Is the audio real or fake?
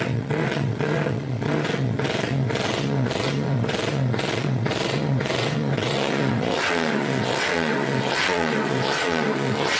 fake